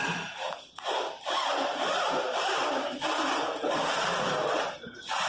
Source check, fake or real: fake